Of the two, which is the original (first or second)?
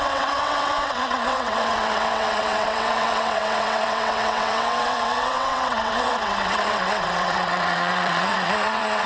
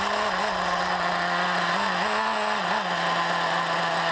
second